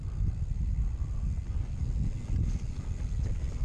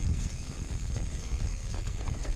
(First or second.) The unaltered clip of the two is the first